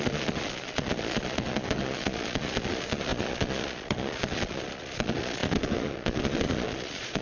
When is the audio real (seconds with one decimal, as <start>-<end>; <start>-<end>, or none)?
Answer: none